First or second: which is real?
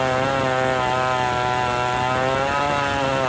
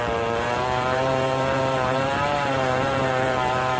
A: first